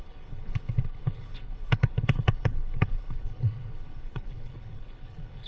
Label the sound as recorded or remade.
remade